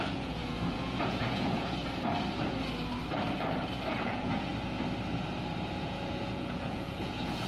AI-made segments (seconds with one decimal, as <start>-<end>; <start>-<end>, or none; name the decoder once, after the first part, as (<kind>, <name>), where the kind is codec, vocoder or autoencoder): 0.0-1.8 (vocoder, Vocos); 3.9-4.5; 5.8-7.5